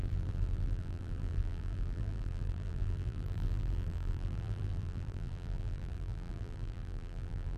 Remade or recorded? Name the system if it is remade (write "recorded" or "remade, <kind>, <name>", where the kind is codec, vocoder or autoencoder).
remade, vocoder, BigVGAN v2